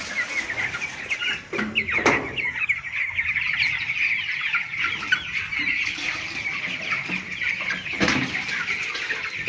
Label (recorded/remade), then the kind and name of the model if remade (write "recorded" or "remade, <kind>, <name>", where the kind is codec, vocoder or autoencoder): recorded